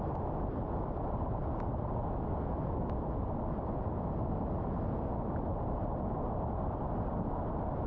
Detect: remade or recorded recorded